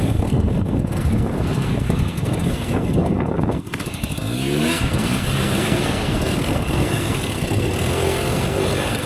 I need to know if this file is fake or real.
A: fake